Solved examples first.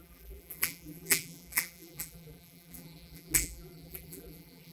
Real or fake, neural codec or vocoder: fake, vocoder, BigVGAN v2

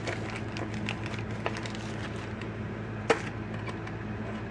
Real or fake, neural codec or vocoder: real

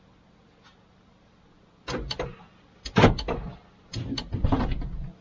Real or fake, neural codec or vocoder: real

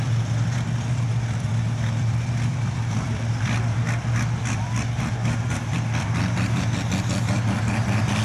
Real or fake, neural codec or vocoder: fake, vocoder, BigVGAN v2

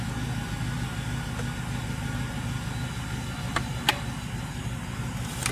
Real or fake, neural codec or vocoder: real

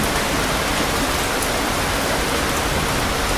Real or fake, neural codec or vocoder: real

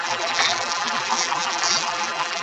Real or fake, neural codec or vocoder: fake, vocoder, BigVGAN v2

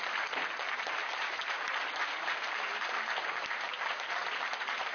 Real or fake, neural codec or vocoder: fake, vocoder, BigVGAN v2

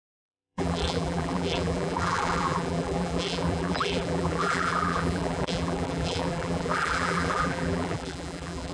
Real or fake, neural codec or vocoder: fake, vocoder, BigVGAN v2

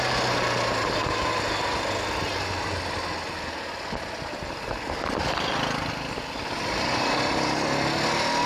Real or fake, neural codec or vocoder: real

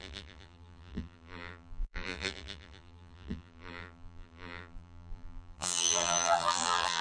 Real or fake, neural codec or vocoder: fake, vocoder, BigVGAN v2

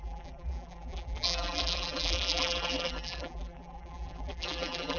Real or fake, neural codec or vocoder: fake, vocoder, BigVGAN v2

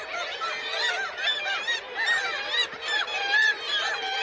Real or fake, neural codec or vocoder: fake, vocoder, BigVGAN v2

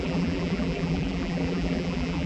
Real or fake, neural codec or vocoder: fake, vocoder, BigVGAN v2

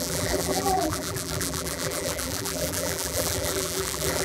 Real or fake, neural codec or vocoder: fake, vocoder, BigVGAN v2